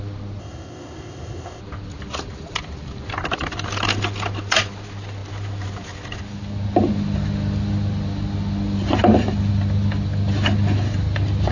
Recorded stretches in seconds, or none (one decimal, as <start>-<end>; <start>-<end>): 0.0-0.4; 1.6-11.5